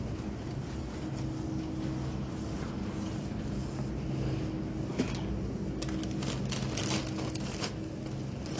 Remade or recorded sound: recorded